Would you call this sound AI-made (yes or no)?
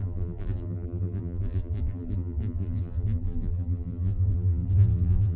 yes